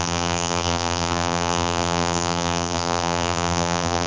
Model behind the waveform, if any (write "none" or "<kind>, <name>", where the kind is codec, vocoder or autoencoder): vocoder, BigVGAN v2